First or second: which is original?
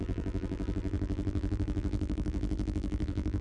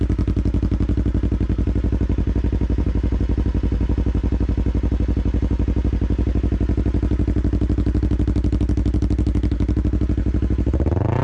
second